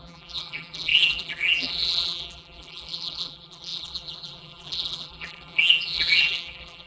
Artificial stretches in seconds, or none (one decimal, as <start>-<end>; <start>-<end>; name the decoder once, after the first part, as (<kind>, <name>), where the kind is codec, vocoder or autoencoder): 0.0-6.9 (vocoder, BigVGAN v2)